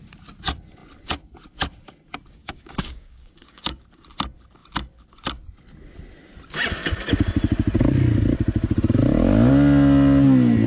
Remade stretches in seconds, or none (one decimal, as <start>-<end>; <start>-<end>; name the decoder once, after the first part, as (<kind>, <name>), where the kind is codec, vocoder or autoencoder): 2.4-3.8 (codec, DAC)